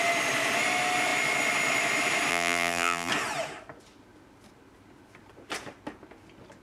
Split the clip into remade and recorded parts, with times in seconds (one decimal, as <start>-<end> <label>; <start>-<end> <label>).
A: 0.0-2.3 recorded; 2.3-3.1 remade; 3.1-6.6 recorded

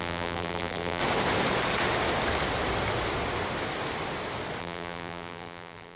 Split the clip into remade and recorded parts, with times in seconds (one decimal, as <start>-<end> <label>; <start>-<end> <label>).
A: 0.0-1.0 remade; 1.0-4.6 recorded; 4.6-6.0 remade

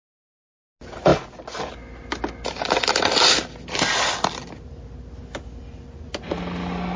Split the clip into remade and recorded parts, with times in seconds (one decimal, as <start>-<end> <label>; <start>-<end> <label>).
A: 0.0-7.0 recorded

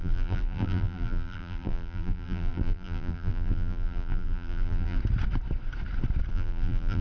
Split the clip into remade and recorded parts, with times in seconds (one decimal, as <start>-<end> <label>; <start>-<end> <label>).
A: 0.0-5.0 remade; 5.0-6.3 recorded; 6.3-7.0 remade

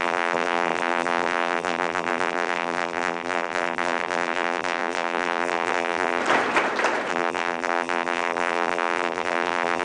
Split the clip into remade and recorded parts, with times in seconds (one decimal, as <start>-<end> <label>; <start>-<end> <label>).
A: 0.0-6.2 remade; 6.2-7.1 recorded; 7.1-9.8 remade

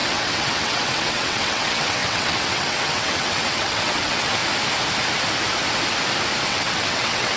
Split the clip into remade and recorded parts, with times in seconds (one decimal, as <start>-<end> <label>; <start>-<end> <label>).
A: 0.0-4.4 remade; 4.4-6.5 recorded; 6.5-7.4 remade